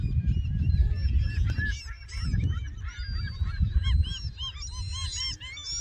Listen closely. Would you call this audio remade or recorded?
recorded